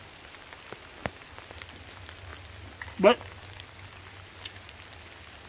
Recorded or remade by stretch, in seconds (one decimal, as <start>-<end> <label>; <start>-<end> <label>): 0.0-5.5 recorded